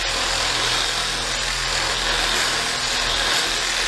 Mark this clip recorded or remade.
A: recorded